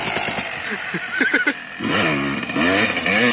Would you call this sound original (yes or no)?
yes